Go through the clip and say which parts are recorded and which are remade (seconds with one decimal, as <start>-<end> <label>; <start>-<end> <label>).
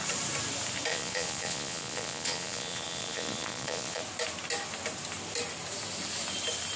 0.0-0.9 recorded; 0.9-4.0 remade; 4.0-6.8 recorded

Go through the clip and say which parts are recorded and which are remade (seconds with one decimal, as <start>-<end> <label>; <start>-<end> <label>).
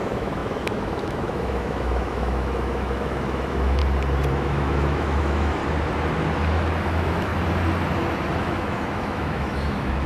0.0-3.8 remade; 3.8-4.3 recorded; 4.3-5.6 remade; 5.6-6.8 recorded; 6.8-7.3 remade; 7.3-8.4 recorded; 8.4-10.1 remade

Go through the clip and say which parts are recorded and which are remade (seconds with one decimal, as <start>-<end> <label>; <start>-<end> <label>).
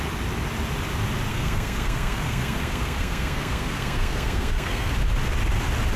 0.0-1.3 recorded; 1.3-4.9 remade; 4.9-6.0 recorded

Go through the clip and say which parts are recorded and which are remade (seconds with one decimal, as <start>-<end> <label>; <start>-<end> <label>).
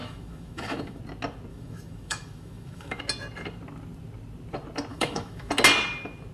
0.0-1.0 remade; 1.0-1.5 recorded; 1.5-3.0 remade; 3.0-4.9 recorded; 4.9-5.5 remade; 5.5-6.3 recorded